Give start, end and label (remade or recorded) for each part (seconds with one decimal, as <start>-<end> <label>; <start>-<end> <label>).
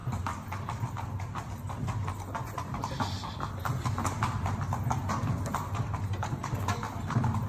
0.0-7.5 recorded